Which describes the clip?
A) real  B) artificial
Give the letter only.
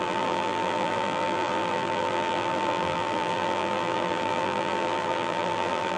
B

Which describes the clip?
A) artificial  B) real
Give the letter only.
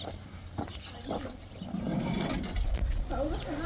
B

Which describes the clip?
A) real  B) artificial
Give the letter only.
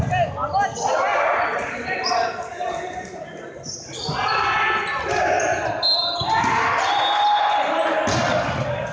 A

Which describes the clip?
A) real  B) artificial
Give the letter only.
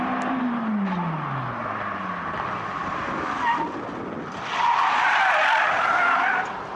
A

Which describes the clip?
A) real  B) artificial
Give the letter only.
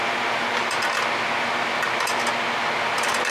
A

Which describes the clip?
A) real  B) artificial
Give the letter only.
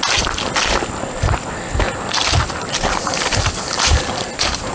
A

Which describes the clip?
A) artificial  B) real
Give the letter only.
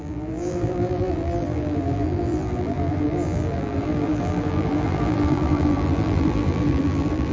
A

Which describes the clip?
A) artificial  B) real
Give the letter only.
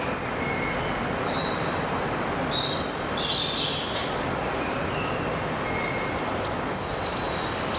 B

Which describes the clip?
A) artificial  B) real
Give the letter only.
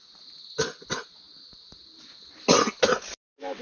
B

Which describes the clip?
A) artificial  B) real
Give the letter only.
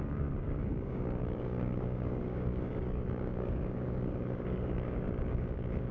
A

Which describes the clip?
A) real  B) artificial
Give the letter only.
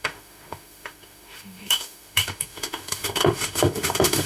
B